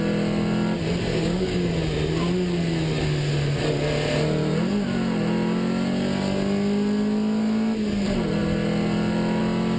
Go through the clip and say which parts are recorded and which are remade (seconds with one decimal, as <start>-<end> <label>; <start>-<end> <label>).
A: 0.0-1.1 recorded; 1.1-1.7 remade; 1.7-9.8 recorded